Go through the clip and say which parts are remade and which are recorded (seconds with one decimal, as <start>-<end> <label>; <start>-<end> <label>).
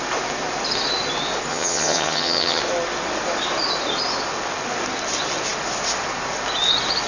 0.0-1.5 recorded; 1.5-2.6 remade; 2.6-7.1 recorded